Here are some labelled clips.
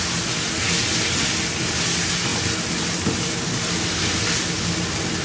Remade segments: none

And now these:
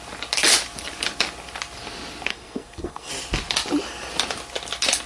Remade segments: 2.3-3.1 (codec, SNAC)

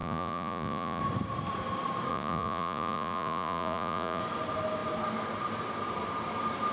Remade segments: 0.0-1.0 (vocoder, Vocos); 2.1-4.2